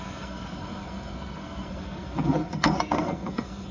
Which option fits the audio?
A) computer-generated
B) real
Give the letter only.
A